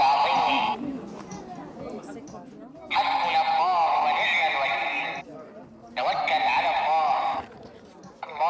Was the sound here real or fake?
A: real